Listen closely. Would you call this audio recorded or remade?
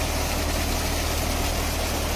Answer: recorded